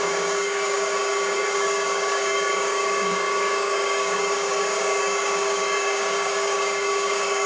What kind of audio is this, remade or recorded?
remade